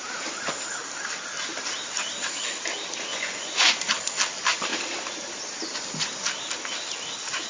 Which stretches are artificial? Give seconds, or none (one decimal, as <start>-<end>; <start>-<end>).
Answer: 3.1-3.7

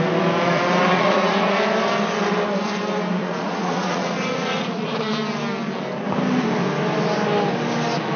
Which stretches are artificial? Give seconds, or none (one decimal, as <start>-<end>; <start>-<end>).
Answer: 0.9-1.6; 3.2-5.0

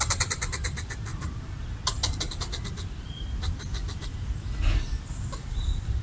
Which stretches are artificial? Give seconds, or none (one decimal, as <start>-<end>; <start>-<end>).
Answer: none

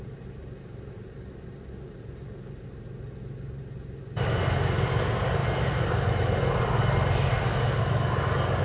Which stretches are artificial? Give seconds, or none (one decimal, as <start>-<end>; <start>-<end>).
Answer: none

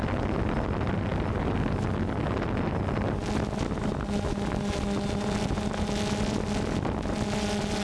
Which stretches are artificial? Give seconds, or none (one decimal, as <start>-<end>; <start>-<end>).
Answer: none

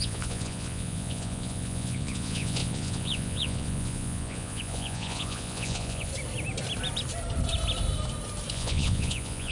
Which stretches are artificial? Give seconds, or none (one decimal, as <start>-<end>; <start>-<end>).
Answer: 0.0-6.1; 8.5-9.5